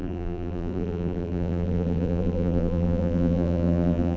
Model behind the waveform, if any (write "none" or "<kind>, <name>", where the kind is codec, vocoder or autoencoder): vocoder, BigVGAN v2